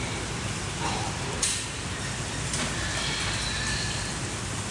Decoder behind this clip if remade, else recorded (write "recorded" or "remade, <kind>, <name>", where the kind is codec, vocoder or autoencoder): recorded